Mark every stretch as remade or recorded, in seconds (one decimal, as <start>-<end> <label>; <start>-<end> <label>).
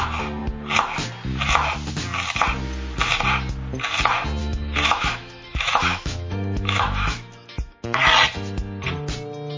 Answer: 0.0-4.4 recorded; 4.4-8.0 remade; 8.0-9.6 recorded